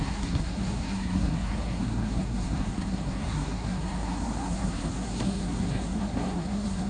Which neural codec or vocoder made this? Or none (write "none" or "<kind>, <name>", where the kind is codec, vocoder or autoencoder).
codec, SNAC